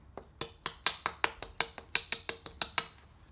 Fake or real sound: real